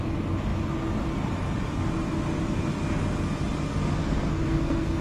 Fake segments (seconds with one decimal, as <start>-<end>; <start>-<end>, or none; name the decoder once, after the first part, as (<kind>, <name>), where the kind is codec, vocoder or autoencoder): 4.0-5.0 (codec, SNAC)